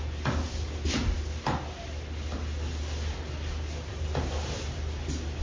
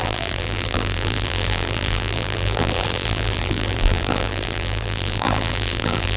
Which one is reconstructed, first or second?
second